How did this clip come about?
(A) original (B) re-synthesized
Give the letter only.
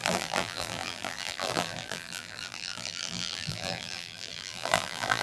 B